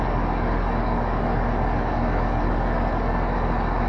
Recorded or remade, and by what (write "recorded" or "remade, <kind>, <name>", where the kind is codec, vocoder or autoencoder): remade, codec, DAC